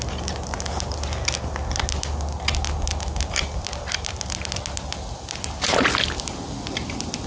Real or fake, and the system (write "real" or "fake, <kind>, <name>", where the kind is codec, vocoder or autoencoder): real